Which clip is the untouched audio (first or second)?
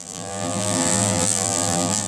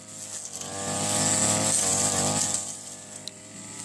second